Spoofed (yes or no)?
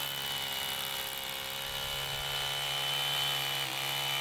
no